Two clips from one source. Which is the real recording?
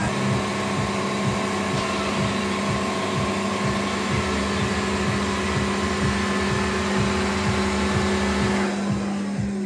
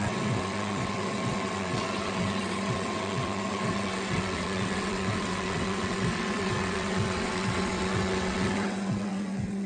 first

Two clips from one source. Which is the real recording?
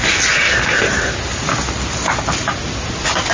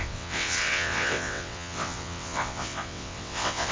first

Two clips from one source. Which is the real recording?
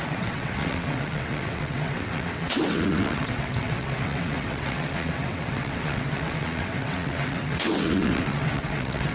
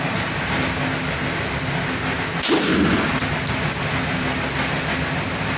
second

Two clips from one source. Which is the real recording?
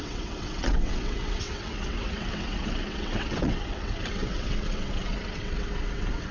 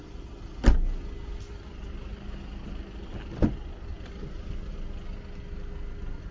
second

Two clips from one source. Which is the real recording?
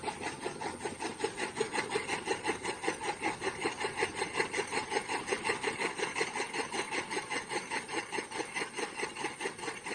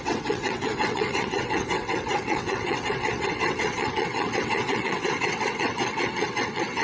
first